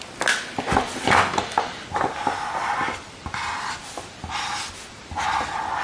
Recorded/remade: recorded